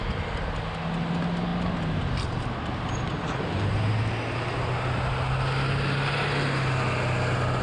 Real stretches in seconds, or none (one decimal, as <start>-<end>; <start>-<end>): 0.0-7.6